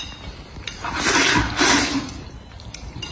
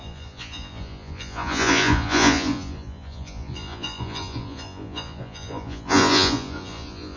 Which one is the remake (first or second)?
second